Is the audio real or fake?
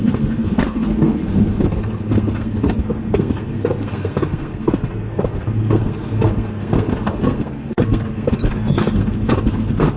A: fake